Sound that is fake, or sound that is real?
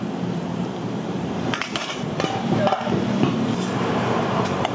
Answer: fake